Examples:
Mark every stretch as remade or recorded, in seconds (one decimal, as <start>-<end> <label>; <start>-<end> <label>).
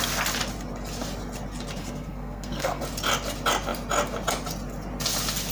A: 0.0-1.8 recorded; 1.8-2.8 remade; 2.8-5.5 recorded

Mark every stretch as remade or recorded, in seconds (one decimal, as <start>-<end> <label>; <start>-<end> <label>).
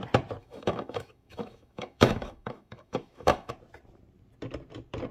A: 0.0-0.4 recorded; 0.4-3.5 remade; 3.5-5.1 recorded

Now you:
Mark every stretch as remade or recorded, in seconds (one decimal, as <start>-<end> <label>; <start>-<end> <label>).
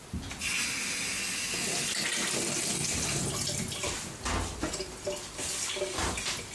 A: 0.0-6.5 recorded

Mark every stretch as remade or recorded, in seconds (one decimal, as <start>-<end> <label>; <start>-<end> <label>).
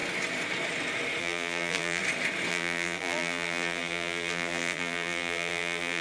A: 0.0-1.2 recorded; 1.2-2.0 remade; 2.0-2.5 recorded; 2.5-6.0 remade